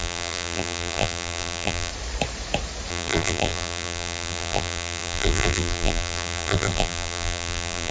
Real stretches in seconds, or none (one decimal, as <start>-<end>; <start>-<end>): 1.9-2.9